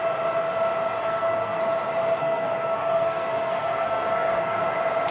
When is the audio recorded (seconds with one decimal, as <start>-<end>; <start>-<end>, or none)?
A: 0.0-1.0; 1.6-2.2; 4.6-5.1